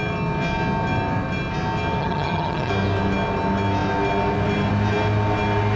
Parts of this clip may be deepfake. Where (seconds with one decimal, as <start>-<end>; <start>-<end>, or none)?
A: 2.0-2.7